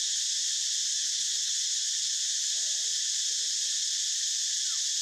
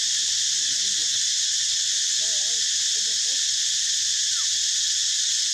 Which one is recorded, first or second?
second